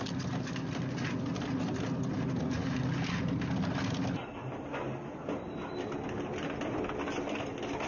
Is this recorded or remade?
recorded